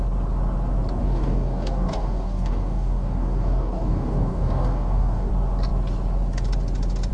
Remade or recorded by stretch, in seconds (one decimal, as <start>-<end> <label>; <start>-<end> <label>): 0.0-1.0 recorded; 1.0-5.3 remade; 5.3-7.1 recorded